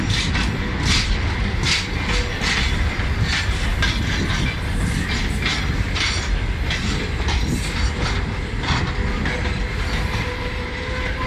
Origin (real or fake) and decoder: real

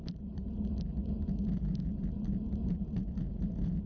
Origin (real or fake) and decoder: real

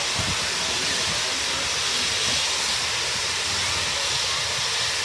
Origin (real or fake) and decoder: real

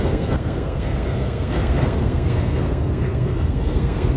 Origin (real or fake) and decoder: fake, codec, SNAC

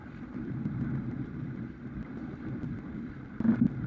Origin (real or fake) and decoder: fake, vocoder, BigVGAN v2